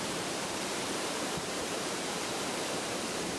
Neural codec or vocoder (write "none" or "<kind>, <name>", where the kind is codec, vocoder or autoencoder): vocoder, BigVGAN v2